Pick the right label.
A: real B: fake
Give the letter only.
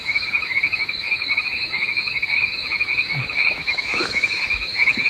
B